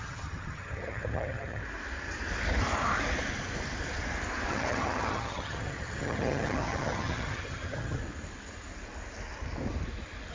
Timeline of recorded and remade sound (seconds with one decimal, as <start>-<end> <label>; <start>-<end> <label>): 0.0-1.6 remade; 1.6-4.5 recorded; 4.5-8.0 remade; 8.0-10.3 recorded